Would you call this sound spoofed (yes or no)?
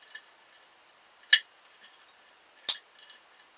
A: no